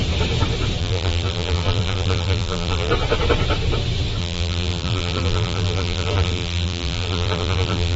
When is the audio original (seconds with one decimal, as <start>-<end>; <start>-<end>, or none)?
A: 0.0-0.8; 2.9-4.2